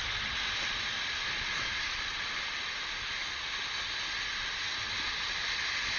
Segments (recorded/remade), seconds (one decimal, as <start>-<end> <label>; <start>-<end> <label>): 0.0-6.0 recorded